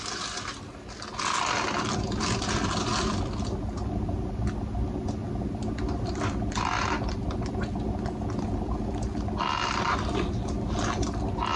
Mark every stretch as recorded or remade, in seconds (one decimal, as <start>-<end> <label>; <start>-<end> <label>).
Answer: 0.0-11.6 recorded